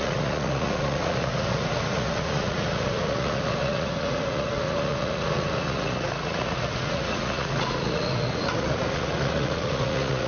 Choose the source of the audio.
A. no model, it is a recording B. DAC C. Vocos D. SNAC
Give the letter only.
C